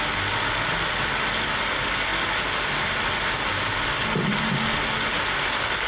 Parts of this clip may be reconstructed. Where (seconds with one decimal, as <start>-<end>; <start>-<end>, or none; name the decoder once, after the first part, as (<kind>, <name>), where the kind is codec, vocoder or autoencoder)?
none